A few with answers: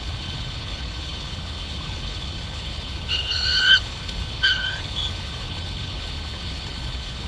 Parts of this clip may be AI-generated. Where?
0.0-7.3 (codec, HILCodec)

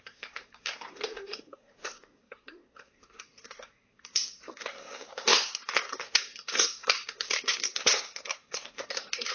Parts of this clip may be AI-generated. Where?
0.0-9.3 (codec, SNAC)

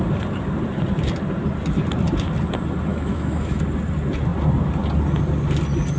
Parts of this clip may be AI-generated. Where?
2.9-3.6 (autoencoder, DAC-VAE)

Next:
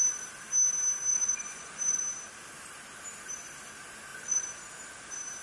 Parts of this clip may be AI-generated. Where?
1.1-2.0 (vocoder, Vocos); 4.1-4.6